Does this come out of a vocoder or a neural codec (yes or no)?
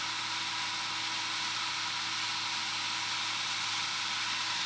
no